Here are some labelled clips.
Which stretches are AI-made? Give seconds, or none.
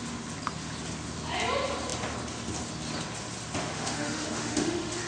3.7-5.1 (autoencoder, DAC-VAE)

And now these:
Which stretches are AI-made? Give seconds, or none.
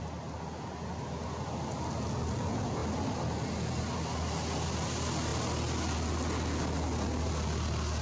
none